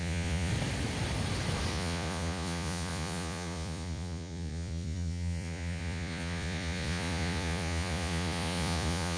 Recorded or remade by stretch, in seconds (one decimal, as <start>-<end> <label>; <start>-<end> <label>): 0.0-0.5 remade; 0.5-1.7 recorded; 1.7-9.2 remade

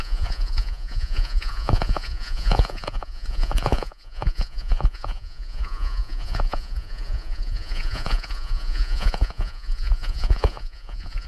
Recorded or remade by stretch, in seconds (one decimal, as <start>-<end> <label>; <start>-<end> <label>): 0.0-11.3 remade

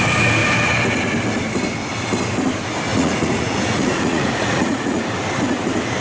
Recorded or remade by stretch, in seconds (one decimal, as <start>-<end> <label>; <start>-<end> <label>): 0.0-2.9 recorded; 2.9-5.0 remade; 5.0-6.0 recorded